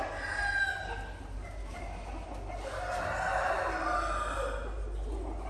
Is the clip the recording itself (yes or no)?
yes